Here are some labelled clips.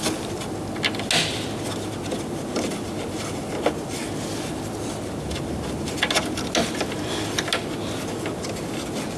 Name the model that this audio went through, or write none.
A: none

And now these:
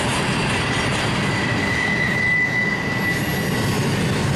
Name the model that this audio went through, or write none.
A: none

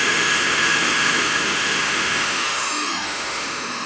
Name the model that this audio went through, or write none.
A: autoencoder, DAC-VAE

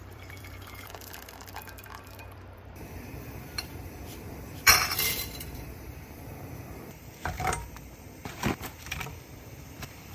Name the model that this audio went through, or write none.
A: vocoder, BigVGAN v2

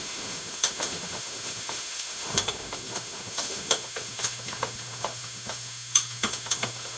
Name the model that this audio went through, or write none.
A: autoencoder, DAC-VAE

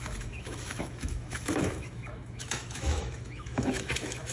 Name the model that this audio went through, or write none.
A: autoencoder, DAC-VAE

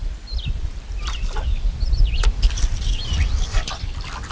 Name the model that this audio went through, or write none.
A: vocoder, BigVGAN v2